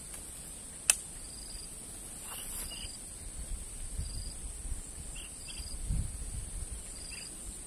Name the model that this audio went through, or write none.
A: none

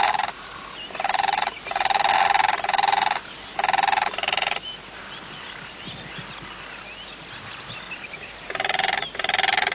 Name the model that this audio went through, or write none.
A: none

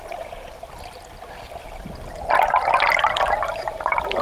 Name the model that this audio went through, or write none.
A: none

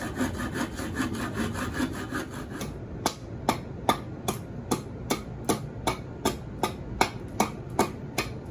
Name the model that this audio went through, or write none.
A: none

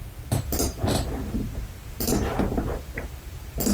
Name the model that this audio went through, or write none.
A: vocoder, BigVGAN v2